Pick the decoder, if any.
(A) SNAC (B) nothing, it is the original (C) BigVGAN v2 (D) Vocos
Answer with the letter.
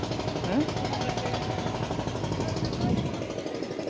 B